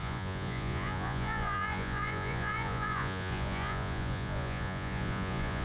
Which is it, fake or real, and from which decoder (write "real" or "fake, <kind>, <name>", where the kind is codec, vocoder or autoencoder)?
fake, vocoder, Vocos